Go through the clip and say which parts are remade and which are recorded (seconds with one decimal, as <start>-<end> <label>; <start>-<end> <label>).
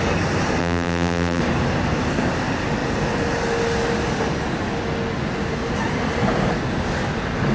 0.0-0.6 recorded; 0.6-1.4 remade; 1.4-7.5 recorded